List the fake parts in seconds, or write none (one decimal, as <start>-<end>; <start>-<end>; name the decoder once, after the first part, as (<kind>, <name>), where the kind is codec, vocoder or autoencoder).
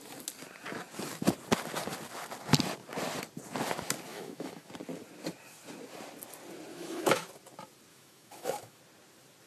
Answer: 4.1-4.7 (autoencoder, DAC-VAE); 6.7-7.2; 7.9-8.8